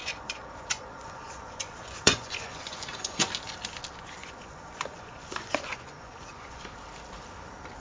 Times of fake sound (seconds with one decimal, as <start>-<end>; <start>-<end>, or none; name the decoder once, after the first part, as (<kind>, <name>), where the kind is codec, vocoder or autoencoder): 0.0-3.3 (vocoder, Vocos); 4.2-6.6